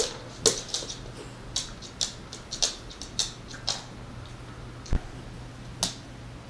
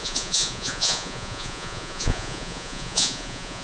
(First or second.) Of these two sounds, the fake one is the second